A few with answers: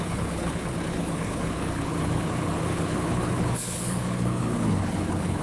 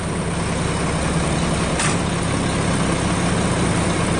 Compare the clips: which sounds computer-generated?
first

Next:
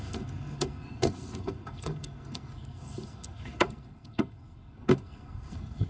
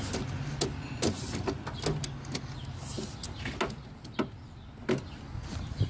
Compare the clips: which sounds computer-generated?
first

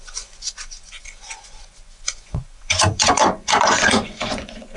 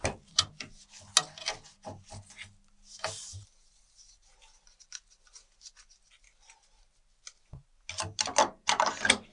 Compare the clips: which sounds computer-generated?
first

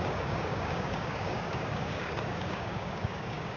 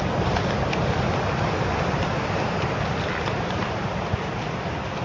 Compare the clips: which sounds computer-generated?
first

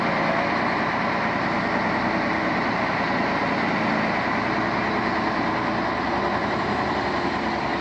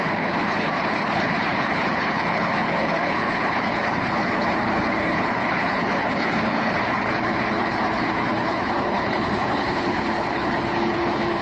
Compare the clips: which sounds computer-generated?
second